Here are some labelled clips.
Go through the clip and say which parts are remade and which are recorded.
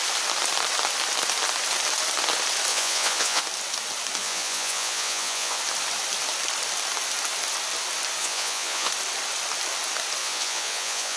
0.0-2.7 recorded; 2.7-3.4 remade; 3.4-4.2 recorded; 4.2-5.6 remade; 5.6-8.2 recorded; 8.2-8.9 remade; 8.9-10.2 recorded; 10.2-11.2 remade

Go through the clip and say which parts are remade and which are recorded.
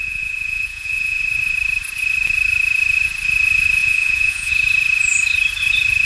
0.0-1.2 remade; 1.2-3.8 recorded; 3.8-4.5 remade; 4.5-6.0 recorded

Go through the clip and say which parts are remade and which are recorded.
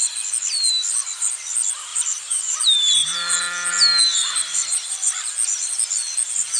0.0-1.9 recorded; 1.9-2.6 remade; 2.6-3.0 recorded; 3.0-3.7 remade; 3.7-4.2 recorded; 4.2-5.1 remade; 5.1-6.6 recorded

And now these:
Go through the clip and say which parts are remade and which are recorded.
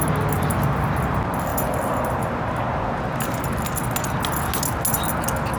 0.0-1.5 recorded; 1.5-2.2 remade; 2.2-5.6 recorded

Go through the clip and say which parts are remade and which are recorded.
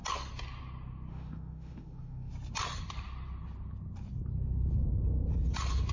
0.0-1.1 recorded; 1.1-2.3 remade; 2.3-5.9 recorded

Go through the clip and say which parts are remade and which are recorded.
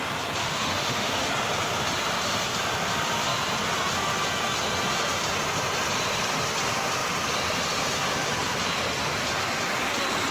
0.0-0.4 recorded; 0.4-1.3 remade; 1.3-10.3 recorded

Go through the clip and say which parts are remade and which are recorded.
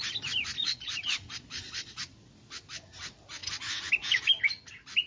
0.0-0.6 recorded; 0.6-2.0 remade; 2.0-5.1 recorded